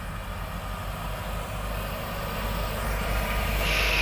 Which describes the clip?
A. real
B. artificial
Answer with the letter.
A